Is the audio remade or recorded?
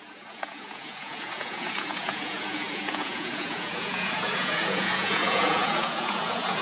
remade